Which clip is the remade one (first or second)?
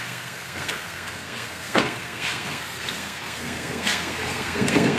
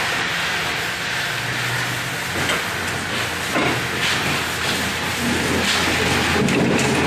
first